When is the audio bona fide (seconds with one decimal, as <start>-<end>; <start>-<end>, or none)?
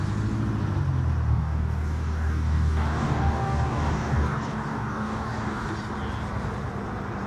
0.0-1.3; 5.7-7.3